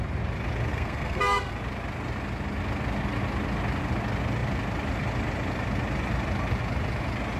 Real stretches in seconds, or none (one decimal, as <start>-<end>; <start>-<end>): 0.0-0.7; 1.5-7.4